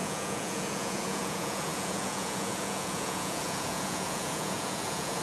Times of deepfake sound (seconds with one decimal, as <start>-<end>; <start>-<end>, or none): 0.0-5.2